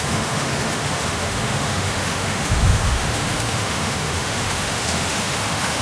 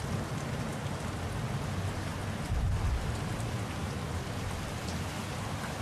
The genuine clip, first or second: second